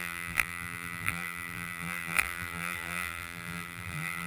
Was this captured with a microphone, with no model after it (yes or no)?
no